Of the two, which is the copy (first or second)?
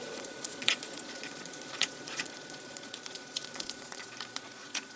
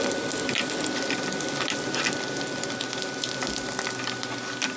first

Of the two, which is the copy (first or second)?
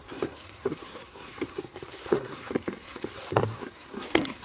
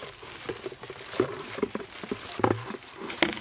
first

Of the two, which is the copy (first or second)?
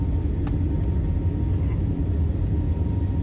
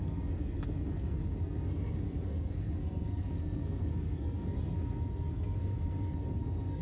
second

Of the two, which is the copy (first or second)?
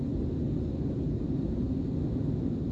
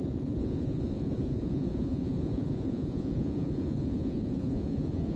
second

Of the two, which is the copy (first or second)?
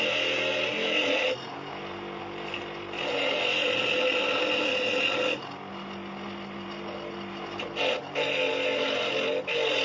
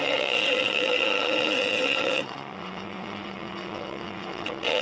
second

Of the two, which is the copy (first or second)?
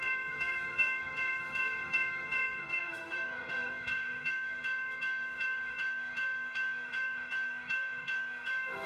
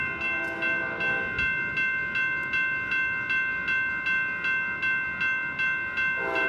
first